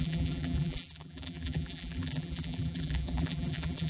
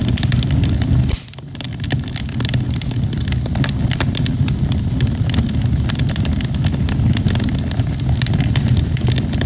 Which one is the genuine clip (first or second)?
second